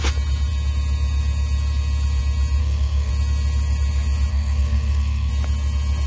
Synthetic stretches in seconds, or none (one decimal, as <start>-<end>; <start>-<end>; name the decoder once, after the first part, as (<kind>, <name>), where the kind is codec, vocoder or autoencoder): 2.6-3.1 (codec, SNAC); 4.3-5.3